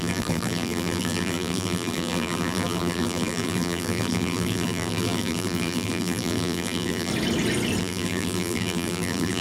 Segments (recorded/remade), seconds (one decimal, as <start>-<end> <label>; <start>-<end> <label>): 0.0-7.1 remade; 7.1-7.8 recorded; 7.8-9.4 remade